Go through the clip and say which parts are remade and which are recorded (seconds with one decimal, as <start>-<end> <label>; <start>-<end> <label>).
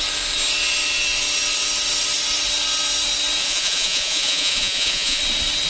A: 0.0-3.4 recorded; 3.4-5.2 remade; 5.2-5.7 recorded